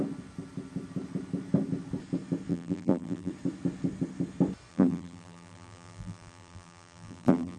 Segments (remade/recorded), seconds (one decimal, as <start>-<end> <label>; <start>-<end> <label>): 0.0-2.5 recorded; 2.5-3.3 remade; 3.3-4.7 recorded; 4.7-7.6 remade